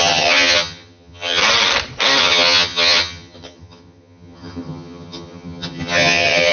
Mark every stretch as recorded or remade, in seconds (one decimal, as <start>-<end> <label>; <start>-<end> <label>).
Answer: 0.0-1.4 remade; 1.4-2.2 recorded; 2.2-6.5 remade